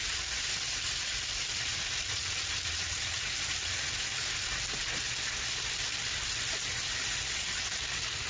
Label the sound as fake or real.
real